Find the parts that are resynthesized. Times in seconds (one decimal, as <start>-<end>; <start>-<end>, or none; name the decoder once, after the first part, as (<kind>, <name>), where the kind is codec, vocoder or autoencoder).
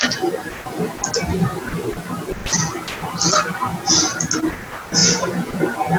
5.0-5.6 (vocoder, Vocos)